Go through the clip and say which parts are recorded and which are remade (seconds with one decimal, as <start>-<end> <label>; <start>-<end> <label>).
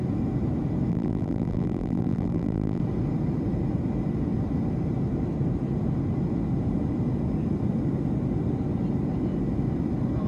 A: 0.0-0.9 recorded; 0.9-2.8 remade; 2.8-10.3 recorded